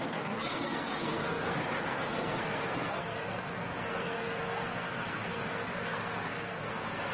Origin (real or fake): fake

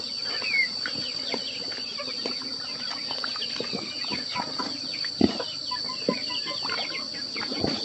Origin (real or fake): real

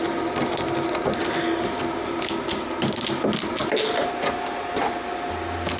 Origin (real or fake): real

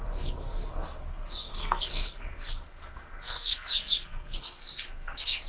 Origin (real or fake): fake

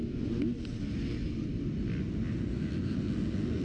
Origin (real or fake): real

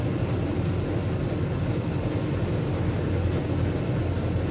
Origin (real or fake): real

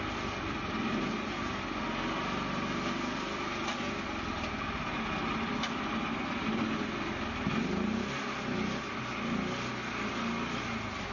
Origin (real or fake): real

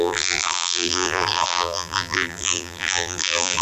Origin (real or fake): fake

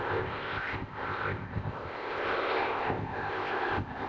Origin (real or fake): fake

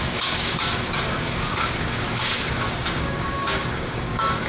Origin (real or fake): fake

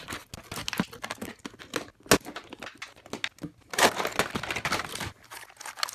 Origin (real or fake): real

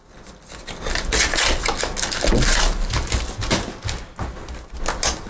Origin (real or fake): real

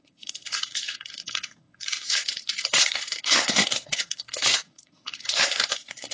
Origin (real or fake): fake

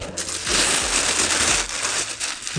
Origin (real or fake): real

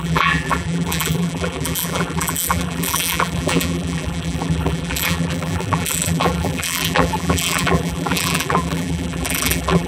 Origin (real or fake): fake